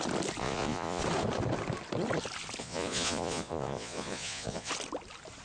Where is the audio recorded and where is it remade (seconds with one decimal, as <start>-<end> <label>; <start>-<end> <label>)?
0.0-0.4 recorded; 0.4-1.0 remade; 1.0-2.6 recorded; 2.6-4.7 remade; 4.7-5.4 recorded